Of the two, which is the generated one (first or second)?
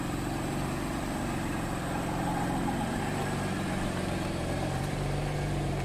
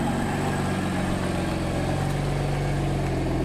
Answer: first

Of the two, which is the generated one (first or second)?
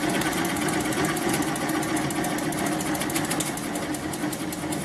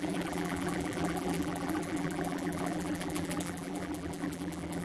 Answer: second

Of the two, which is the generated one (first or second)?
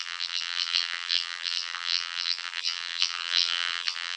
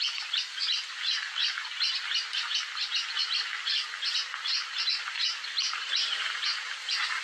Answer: first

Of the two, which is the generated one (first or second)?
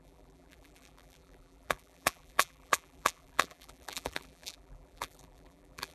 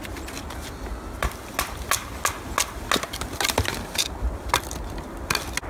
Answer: first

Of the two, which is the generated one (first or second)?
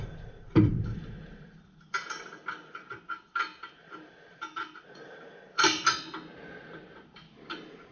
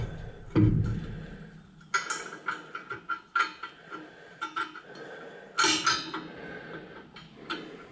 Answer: first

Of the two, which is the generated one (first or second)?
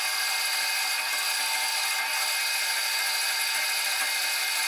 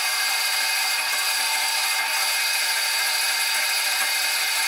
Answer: second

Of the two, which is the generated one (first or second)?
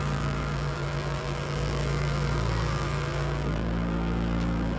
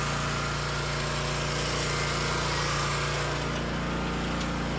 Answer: first